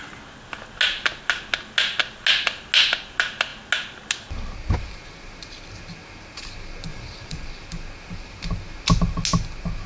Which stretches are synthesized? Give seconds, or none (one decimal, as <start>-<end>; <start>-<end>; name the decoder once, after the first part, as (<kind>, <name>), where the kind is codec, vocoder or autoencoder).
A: 6.9-7.5 (vocoder, Vocos)